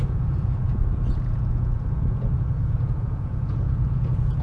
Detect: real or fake fake